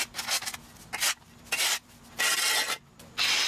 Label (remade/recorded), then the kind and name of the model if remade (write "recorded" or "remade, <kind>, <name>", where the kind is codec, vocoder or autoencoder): recorded